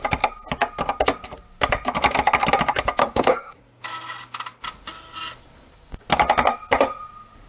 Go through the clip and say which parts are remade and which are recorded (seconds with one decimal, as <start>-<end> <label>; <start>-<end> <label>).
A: 0.0-3.0 recorded; 3.0-3.6 remade; 3.6-7.5 recorded